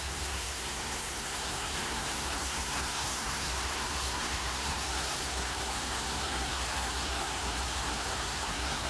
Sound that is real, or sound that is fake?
fake